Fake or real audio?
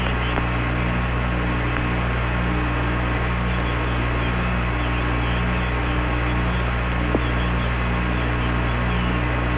real